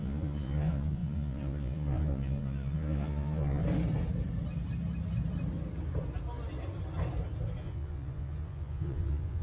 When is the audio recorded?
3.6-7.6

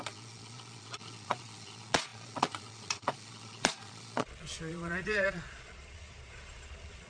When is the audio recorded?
none

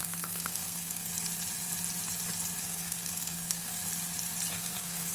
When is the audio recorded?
1.1-2.6; 3.8-4.5

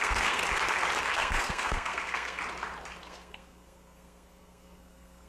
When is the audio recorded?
0.4-1.0; 2.4-3.0

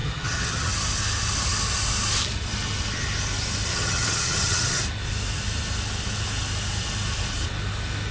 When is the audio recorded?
0.7-3.7; 4.8-8.1

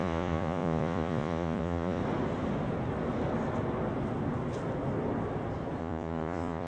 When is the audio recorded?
2.0-5.8